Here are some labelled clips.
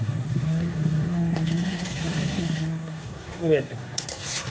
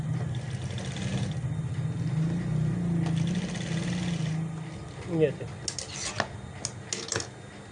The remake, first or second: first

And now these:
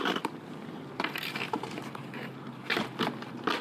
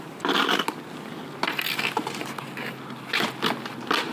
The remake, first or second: first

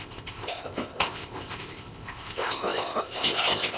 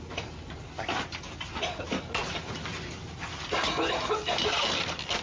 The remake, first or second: first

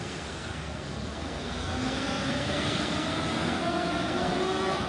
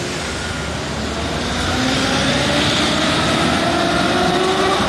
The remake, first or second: first